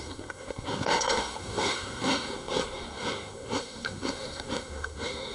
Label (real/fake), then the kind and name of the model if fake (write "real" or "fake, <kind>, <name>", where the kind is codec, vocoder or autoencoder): fake, codec, SNAC